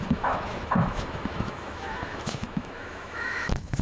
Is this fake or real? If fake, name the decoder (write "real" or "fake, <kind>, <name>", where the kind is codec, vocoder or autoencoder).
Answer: fake, autoencoder, DAC-VAE